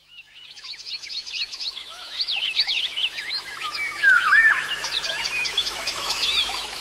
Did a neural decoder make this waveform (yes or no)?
yes